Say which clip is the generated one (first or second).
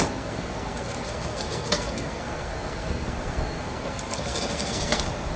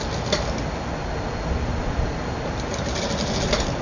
first